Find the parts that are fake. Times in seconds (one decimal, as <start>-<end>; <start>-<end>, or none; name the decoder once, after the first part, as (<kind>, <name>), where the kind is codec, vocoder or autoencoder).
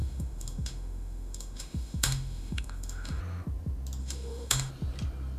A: 0.0-3.2 (autoencoder, DAC-VAE); 4.0-4.7